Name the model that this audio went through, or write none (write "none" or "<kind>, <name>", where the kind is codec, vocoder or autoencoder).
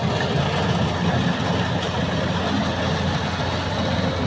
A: none